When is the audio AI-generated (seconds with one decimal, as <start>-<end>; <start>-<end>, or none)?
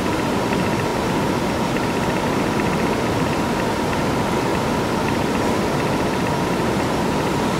none